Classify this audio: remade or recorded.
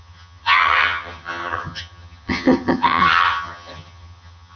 remade